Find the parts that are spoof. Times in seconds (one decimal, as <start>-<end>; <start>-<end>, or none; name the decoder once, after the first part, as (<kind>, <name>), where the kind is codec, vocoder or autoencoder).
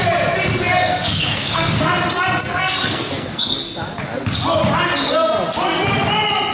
0.9-1.9 (codec, SNAC); 2.5-3.6